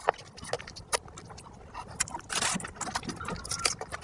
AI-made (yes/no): no